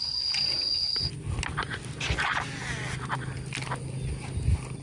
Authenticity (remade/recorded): recorded